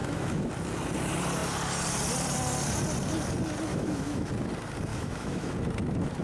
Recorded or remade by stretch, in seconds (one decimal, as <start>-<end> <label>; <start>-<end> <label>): 0.0-0.5 remade; 0.5-3.7 recorded; 3.7-4.3 remade; 4.3-4.9 recorded; 4.9-5.5 remade; 5.5-6.2 recorded

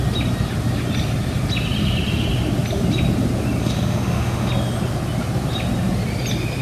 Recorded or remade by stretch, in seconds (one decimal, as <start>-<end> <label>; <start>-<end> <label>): 0.0-3.6 recorded; 3.6-4.5 remade; 4.5-6.6 recorded

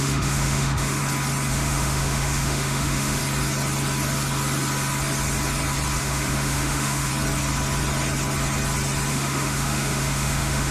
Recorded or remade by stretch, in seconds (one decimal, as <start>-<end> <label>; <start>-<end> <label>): 0.0-1.0 remade; 1.0-1.5 recorded; 1.5-3.2 remade; 3.2-6.0 recorded; 6.0-7.1 remade; 7.1-9.1 recorded; 9.1-10.7 remade

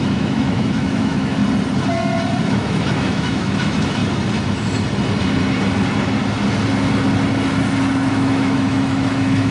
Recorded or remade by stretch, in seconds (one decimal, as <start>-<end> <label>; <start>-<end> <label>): 0.0-1.4 remade; 1.4-2.4 recorded; 2.4-4.0 remade; 4.0-8.1 recorded; 8.1-9.5 remade

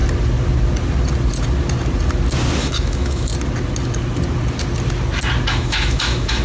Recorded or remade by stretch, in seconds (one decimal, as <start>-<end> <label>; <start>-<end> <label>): 0.0-2.6 recorded; 2.6-3.3 remade; 3.3-5.5 recorded; 5.5-6.4 remade

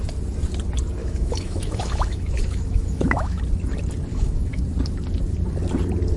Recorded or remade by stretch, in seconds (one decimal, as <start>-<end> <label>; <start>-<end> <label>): 0.0-1.0 recorded; 1.0-3.4 remade; 3.4-4.1 recorded; 4.1-4.6 remade; 4.6-6.2 recorded

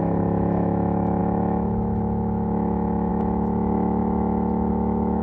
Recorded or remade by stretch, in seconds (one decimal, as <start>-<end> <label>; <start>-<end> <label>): 0.0-4.0 remade; 4.0-4.7 recorded; 4.7-5.2 remade